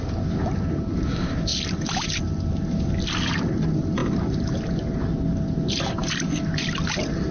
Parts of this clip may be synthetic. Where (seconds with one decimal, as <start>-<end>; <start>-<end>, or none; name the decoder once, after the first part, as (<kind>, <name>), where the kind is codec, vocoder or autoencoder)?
none